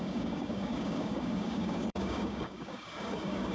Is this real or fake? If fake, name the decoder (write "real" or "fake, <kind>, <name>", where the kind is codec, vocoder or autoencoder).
fake, codec, DAC